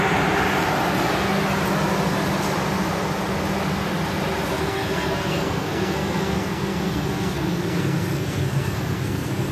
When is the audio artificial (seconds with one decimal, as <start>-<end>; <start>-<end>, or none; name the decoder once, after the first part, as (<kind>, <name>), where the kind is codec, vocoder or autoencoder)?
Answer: 4.5-9.5 (codec, SNAC)